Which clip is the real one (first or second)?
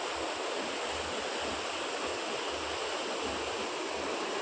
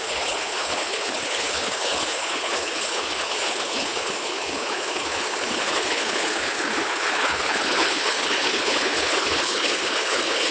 first